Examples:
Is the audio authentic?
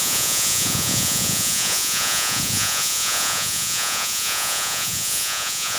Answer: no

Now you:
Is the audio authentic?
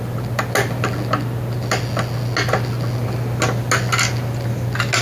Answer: yes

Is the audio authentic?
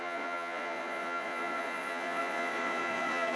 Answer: no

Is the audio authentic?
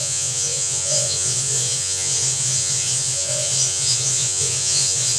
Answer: no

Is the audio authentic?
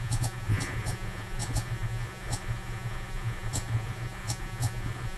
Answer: no